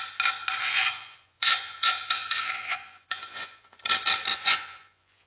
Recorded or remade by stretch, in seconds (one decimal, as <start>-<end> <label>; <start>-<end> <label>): 0.0-0.6 recorded; 0.6-3.8 remade; 3.8-4.3 recorded; 4.3-5.3 remade